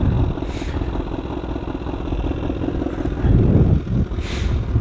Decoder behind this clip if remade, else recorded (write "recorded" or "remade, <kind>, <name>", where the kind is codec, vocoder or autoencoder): recorded